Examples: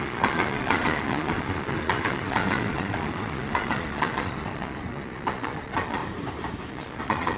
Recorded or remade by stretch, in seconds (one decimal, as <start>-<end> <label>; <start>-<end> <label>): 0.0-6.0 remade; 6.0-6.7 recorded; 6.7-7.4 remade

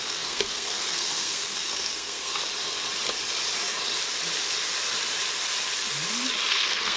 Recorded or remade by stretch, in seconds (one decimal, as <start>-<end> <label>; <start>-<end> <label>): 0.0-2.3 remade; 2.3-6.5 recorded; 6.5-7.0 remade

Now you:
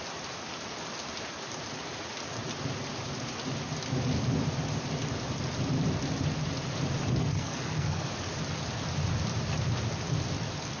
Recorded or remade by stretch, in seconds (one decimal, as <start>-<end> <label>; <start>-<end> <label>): 0.0-7.2 recorded; 7.2-8.1 remade; 8.1-10.8 recorded

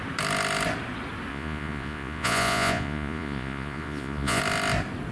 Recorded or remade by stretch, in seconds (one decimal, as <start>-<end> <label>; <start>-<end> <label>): 0.0-1.3 recorded; 1.3-4.4 remade; 4.4-5.1 recorded